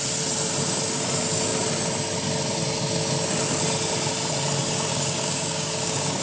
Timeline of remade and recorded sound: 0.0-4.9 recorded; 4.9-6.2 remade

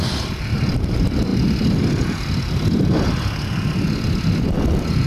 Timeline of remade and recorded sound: 0.0-5.1 recorded

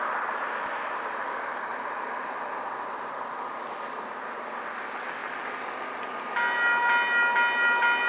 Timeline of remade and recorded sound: 0.0-8.1 recorded

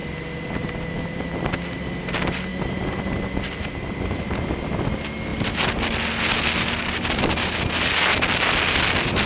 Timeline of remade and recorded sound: 0.0-9.3 recorded

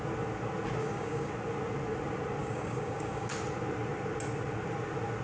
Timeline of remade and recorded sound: 0.0-0.8 recorded; 0.8-1.3 remade; 1.3-2.4 recorded; 2.4-3.3 remade; 3.3-5.2 recorded

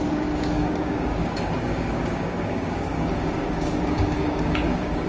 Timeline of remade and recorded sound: 0.0-5.1 remade

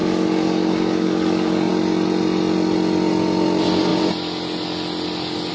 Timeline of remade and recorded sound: 0.0-1.7 remade; 1.7-5.5 recorded